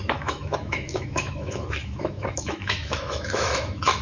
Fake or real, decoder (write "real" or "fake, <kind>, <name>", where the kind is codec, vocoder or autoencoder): fake, autoencoder, DAC-VAE